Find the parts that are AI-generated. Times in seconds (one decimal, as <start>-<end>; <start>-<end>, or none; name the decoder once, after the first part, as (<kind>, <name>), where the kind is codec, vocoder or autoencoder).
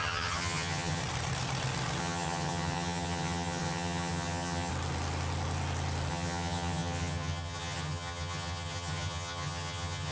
0.0-1.0 (vocoder, HiFi-GAN); 2.0-4.7; 6.1-10.1